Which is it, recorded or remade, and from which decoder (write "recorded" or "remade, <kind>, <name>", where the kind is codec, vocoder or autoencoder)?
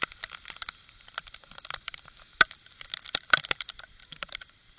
remade, vocoder, BigVGAN v2